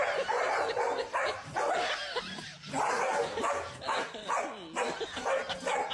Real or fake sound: real